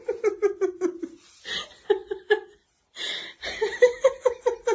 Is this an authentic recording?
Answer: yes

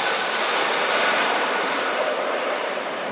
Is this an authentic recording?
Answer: no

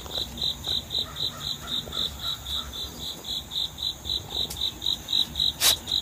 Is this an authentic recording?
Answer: yes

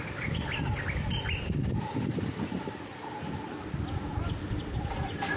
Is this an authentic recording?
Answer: yes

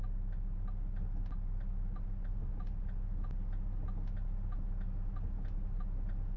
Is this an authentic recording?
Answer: yes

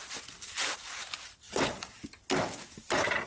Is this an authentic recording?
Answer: yes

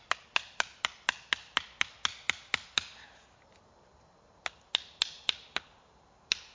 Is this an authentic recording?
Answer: yes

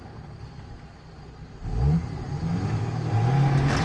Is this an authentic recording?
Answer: yes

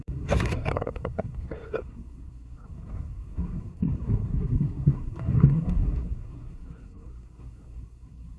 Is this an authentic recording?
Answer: no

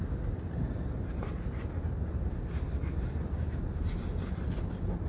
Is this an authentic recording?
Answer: yes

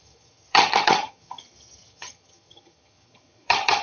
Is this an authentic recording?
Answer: no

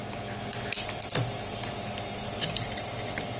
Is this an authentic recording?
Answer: yes